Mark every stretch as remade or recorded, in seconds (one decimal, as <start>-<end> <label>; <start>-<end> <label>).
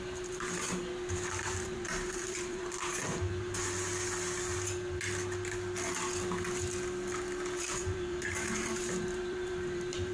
0.0-0.8 remade; 0.8-1.4 recorded; 1.4-3.9 remade; 3.9-7.6 recorded; 7.6-10.1 remade